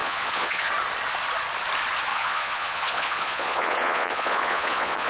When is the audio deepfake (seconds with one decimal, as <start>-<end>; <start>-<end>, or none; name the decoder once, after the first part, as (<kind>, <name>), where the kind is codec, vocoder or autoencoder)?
0.0-0.7 (vocoder, Vocos); 2.1-5.1